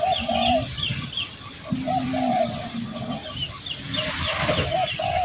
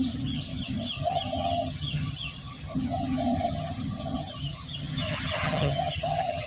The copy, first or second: second